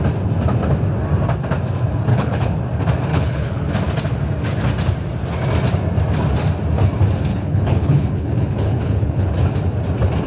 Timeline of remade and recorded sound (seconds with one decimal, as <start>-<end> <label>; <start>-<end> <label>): 0.0-2.1 recorded; 2.1-2.6 remade; 2.6-3.1 recorded; 3.1-3.7 remade; 3.7-7.3 recorded; 7.3-9.3 remade; 9.3-10.3 recorded